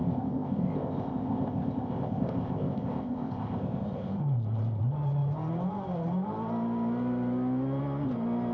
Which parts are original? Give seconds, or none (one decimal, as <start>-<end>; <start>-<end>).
4.2-8.5